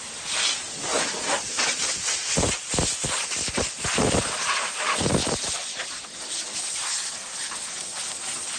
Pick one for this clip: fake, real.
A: real